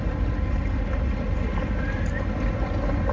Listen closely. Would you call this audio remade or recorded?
recorded